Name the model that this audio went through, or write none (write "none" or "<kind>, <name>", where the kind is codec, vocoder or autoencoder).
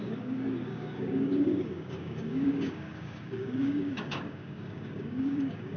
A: codec, DAC